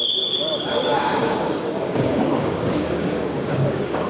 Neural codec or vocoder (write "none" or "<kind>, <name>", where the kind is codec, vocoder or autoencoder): codec, DAC